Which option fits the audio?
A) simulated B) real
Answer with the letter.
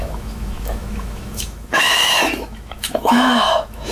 A